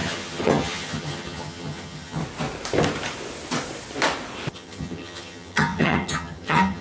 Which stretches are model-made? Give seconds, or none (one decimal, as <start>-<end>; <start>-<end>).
0.0-2.2; 4.5-6.8